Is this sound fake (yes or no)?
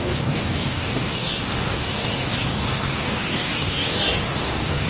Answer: yes